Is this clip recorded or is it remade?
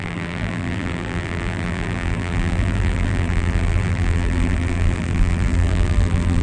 remade